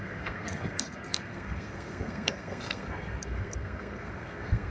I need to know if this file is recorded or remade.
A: remade